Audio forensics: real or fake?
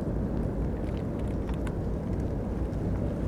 real